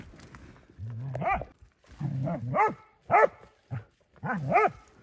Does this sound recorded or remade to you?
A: recorded